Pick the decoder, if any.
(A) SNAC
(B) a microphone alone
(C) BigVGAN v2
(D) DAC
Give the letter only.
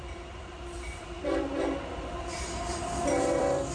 C